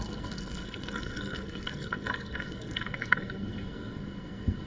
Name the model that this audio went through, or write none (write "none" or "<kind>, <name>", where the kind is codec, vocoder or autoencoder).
codec, SNAC